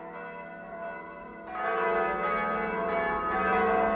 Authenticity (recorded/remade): recorded